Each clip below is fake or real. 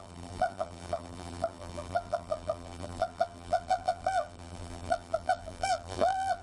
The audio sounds fake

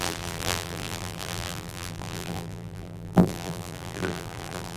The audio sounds fake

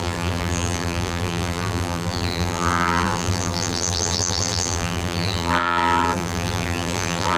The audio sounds fake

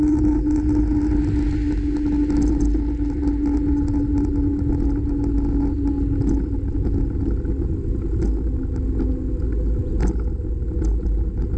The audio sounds real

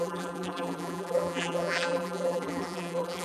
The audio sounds fake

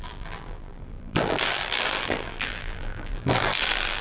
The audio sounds fake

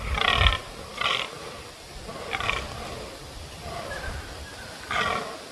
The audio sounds fake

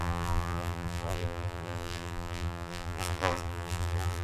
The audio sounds fake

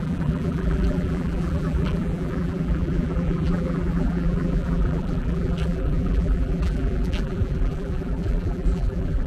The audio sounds fake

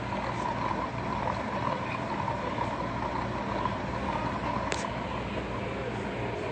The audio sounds real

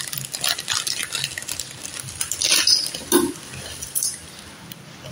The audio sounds real